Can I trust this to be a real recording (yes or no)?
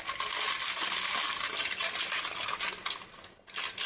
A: yes